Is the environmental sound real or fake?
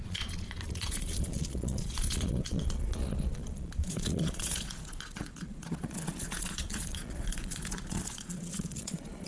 fake